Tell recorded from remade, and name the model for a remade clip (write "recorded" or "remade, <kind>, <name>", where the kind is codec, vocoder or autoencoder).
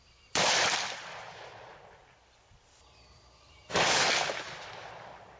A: remade, vocoder, BigVGAN v2